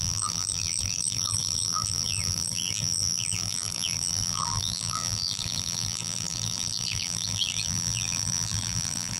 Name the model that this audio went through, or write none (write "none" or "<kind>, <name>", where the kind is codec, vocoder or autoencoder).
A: vocoder, BigVGAN v2